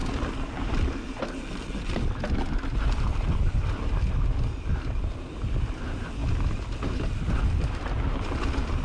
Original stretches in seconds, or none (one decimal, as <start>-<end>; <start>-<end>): 0.0-8.8

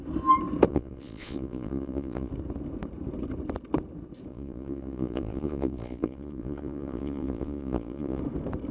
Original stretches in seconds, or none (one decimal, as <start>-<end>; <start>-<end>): 0.0-0.7; 2.3-4.3; 8.2-8.7

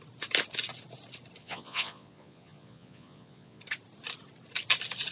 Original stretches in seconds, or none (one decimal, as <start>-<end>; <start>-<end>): 0.0-1.4; 3.6-5.1

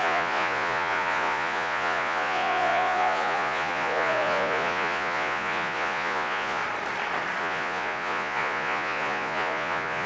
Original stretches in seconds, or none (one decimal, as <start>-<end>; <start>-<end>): 6.6-7.4